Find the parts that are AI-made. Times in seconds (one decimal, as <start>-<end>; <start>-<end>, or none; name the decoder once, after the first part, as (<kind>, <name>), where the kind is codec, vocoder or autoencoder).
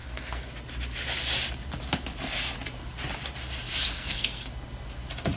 0.0-0.5 (codec, SNAC); 3.9-4.5